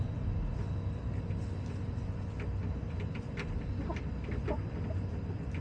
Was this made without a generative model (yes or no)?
yes